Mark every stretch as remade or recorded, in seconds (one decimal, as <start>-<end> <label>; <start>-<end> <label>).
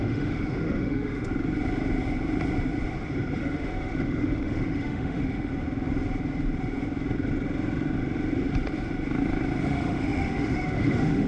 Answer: 0.0-1.3 remade; 1.3-3.4 recorded; 3.4-5.5 remade; 5.5-9.6 recorded; 9.6-11.3 remade